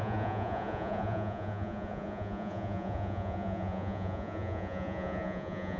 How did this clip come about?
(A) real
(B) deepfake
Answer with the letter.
B